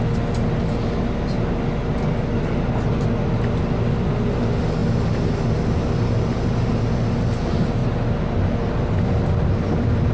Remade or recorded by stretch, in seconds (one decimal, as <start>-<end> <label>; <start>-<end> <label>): 0.0-10.1 recorded